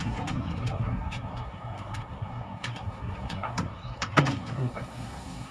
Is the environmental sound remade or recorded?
remade